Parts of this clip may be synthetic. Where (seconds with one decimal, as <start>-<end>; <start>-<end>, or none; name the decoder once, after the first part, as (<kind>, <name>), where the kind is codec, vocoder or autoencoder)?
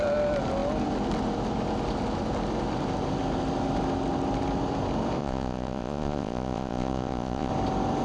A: 5.2-7.5 (vocoder, Vocos)